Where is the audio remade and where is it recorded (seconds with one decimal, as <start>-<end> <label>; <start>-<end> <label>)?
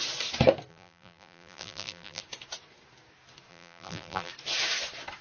0.0-0.7 recorded; 0.7-2.2 remade; 2.2-3.5 recorded; 3.5-4.3 remade; 4.3-5.2 recorded